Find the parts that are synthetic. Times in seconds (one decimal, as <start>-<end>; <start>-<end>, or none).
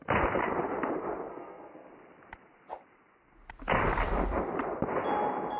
1.3-1.9